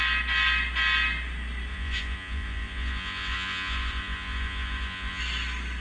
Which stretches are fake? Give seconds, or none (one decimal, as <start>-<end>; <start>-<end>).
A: 1.7-5.2